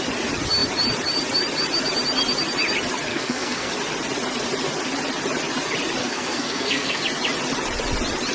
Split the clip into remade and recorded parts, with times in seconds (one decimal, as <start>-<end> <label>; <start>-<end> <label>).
0.0-3.1 recorded; 3.1-3.7 remade; 3.7-6.0 recorded; 6.0-7.0 remade; 7.0-8.3 recorded